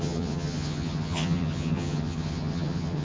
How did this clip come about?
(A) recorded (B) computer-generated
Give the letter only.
B